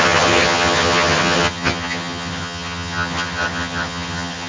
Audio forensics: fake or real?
fake